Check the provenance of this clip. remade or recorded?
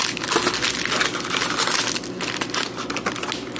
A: recorded